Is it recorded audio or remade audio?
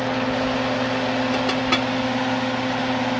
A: recorded